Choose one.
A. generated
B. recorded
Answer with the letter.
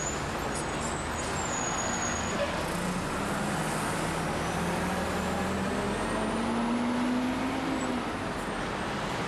B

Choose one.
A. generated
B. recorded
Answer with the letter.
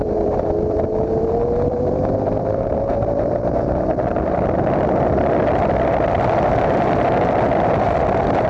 A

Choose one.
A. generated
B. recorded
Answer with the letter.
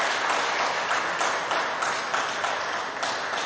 B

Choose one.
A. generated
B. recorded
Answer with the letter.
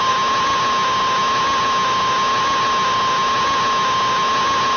B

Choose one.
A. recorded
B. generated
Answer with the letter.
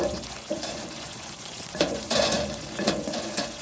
B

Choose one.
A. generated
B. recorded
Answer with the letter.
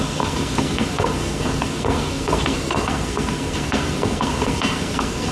A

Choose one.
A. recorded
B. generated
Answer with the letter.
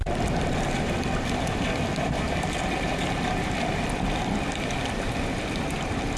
B